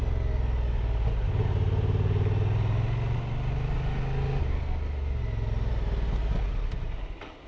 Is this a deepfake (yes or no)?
no